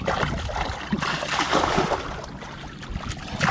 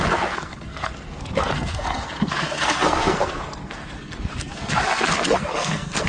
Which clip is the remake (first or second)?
second